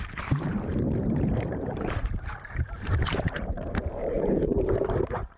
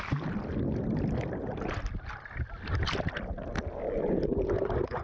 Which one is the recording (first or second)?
second